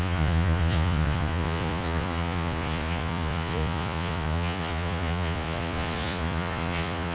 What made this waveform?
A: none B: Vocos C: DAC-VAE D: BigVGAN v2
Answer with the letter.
B